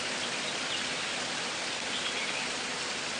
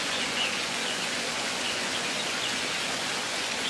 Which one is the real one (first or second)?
first